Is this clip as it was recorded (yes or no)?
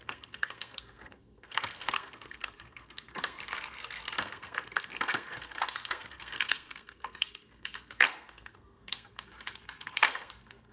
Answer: no